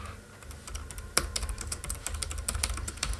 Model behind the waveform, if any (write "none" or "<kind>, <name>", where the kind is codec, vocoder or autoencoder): none